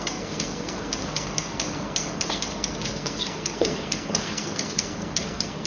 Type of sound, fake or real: fake